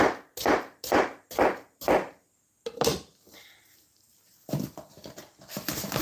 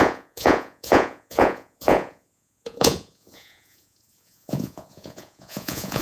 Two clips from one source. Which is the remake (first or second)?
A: second